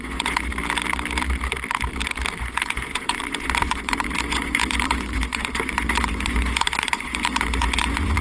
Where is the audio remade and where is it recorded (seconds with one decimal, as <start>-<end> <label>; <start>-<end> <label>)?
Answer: 0.0-0.5 remade; 0.5-2.4 recorded; 2.4-8.2 remade